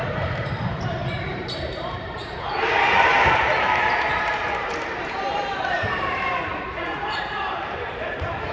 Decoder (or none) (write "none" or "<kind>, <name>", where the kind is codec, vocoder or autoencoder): vocoder, BigVGAN v2